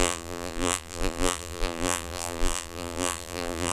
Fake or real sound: fake